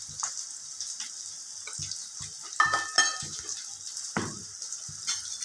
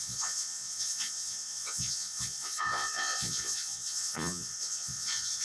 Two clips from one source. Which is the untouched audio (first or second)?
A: first